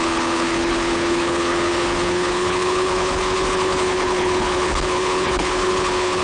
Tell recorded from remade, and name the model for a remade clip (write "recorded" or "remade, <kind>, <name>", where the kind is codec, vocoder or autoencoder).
remade, codec, HILCodec